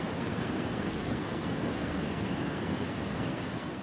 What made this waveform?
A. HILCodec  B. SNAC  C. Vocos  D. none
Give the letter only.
B